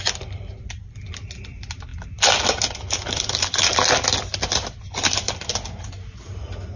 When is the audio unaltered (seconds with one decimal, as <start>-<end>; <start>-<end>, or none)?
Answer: 0.0-6.8